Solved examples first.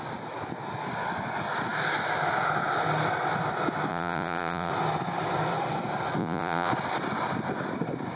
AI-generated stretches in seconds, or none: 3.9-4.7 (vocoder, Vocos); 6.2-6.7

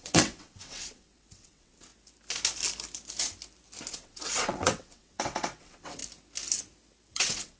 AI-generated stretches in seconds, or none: 0.0-1.9 (vocoder, WaveNeXt); 3.9-6.0; 7.1-7.6

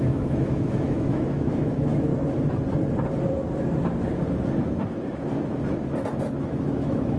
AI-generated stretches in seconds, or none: 0.0-2.1 (autoencoder, DAC-VAE); 6.4-7.2

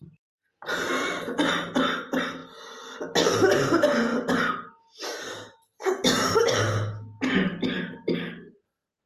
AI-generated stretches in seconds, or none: none

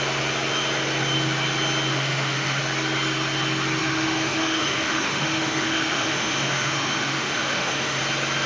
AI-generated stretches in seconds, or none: 1.9-2.6 (autoencoder, DAC-VAE); 3.8-8.0